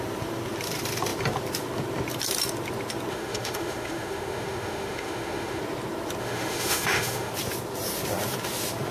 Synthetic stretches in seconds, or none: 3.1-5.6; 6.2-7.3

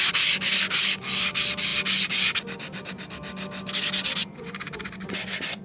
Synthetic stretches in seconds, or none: 4.2-5.6

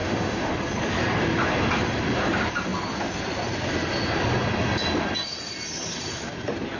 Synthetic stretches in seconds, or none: 0.0-0.5

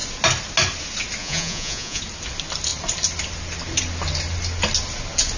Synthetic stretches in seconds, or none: 1.2-2.0

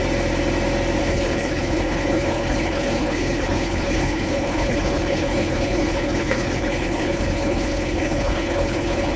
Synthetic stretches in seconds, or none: 1.0-9.2

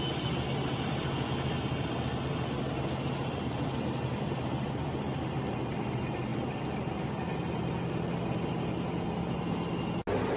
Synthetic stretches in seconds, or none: none

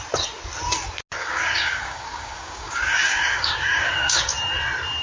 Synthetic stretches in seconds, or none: 1.2-4.2

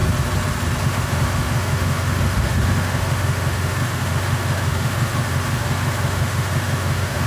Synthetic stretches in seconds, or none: 0.8-7.3